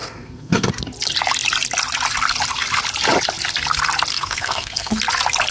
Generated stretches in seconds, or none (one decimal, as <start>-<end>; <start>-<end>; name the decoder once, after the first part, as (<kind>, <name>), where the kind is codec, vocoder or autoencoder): 0.0-0.7 (codec, SNAC); 4.1-5.0